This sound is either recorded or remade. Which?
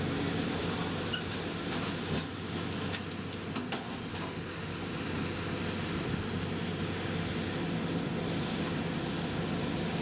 recorded